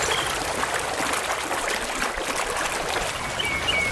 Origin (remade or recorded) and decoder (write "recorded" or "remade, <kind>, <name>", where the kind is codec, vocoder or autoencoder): recorded